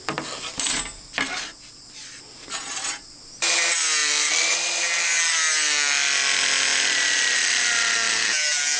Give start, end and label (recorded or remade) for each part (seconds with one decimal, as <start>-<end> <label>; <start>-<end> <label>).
0.0-4.0 recorded; 4.0-4.8 remade; 4.8-6.7 recorded; 6.7-8.8 remade